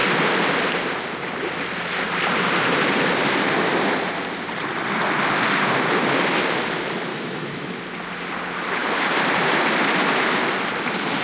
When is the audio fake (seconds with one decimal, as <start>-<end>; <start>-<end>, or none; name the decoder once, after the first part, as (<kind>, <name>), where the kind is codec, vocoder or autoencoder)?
7.1-7.8 (autoencoder, DAC-VAE)